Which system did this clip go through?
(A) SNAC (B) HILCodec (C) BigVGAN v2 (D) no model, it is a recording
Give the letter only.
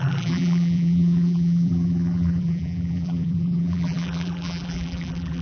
C